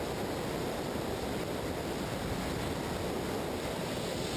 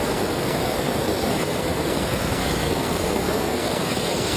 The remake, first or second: second